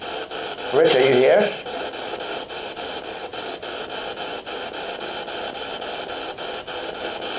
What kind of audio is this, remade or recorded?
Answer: recorded